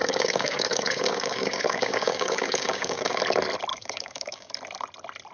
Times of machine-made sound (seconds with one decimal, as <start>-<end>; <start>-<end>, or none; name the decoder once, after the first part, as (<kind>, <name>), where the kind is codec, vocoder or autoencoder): 0.0-3.2 (codec, DAC); 3.7-4.5